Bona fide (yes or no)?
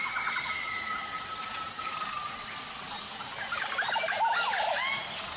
yes